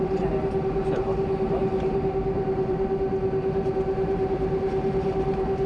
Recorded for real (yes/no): no